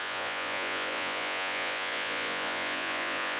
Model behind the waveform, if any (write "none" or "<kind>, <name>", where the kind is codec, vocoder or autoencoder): vocoder, Vocos